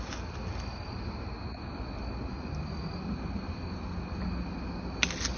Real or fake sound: real